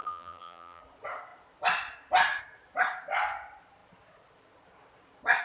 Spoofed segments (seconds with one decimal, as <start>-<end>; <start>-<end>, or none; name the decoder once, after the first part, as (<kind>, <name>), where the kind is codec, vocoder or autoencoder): 0.0-0.8 (vocoder, BigVGAN v2)